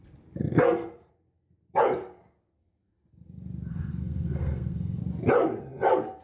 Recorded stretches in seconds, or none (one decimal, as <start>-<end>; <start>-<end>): 0.0-0.4; 1.1-3.7; 5.0-6.2